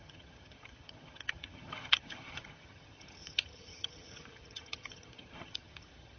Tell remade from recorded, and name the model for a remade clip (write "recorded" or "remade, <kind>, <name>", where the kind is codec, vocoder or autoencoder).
remade, vocoder, HiFi-GAN